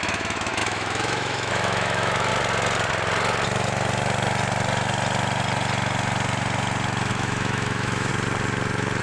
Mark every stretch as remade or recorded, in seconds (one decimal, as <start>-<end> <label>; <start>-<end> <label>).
0.0-2.3 remade; 2.3-7.1 recorded; 7.1-8.1 remade; 8.1-9.0 recorded